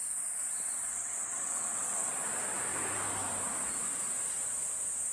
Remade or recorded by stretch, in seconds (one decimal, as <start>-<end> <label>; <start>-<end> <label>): 0.0-0.9 recorded; 0.9-2.1 remade; 2.1-5.1 recorded